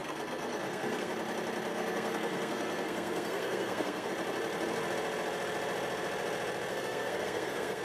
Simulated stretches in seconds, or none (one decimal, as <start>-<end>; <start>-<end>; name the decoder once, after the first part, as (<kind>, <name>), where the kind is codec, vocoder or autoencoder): 0.0-1.1 (codec, SNAC); 1.7-4.1; 6.7-7.8